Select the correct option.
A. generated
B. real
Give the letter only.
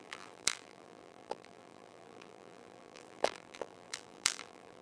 A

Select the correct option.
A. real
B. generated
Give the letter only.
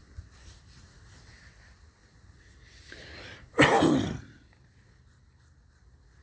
A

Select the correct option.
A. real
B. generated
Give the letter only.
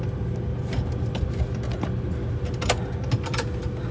A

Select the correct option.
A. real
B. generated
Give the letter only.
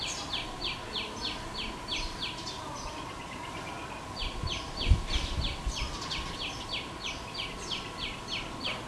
A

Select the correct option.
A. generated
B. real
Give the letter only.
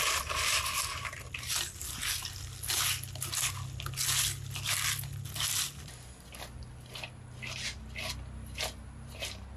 B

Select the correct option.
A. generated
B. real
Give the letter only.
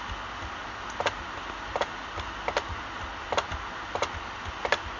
B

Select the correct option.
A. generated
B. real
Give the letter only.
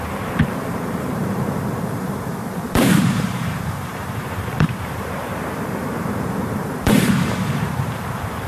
A